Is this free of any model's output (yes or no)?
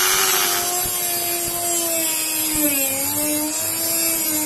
yes